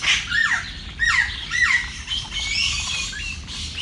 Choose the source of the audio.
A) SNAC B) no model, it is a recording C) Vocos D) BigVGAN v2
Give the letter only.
B